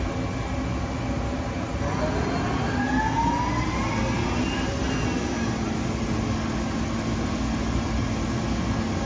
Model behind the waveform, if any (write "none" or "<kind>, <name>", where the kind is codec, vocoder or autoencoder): none